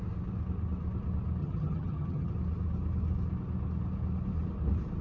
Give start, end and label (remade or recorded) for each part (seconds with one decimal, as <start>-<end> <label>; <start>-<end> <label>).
0.0-1.4 recorded; 1.4-2.3 remade; 2.3-5.0 recorded